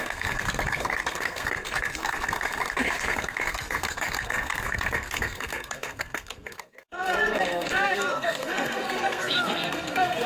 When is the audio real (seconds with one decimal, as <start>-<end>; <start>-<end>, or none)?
none